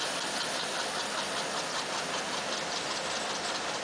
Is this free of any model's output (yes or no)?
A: yes